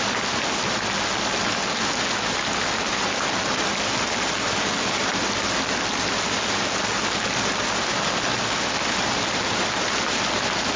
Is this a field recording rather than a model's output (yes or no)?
yes